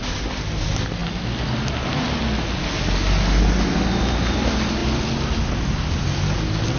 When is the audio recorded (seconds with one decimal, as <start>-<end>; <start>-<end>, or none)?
0.0-6.8